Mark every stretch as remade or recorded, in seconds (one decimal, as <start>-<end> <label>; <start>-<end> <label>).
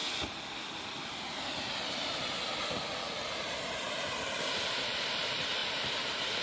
0.0-0.7 recorded; 0.7-2.5 remade; 2.5-3.2 recorded; 3.2-6.4 remade